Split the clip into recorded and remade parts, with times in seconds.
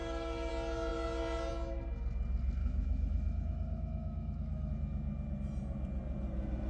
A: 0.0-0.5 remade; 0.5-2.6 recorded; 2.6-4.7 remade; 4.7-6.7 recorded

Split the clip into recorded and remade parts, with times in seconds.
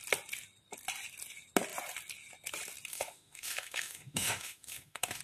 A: 0.0-2.9 recorded; 2.9-5.2 remade